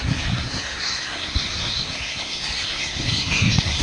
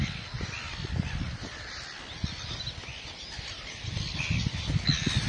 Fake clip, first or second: first